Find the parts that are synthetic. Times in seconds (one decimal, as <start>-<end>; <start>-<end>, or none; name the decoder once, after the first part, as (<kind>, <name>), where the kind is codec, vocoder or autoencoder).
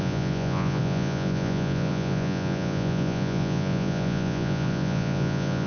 0.0-5.7 (vocoder, Vocos)